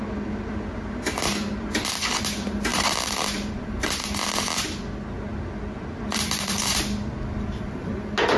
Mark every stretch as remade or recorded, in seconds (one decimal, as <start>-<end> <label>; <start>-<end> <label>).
0.0-2.7 recorded; 2.7-3.5 remade; 3.5-5.3 recorded; 5.3-7.9 remade; 7.9-8.4 recorded